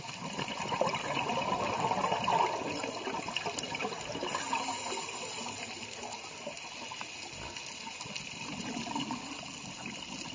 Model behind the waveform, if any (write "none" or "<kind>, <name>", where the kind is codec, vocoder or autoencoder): none